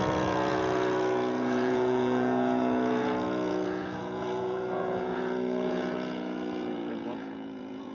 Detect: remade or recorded remade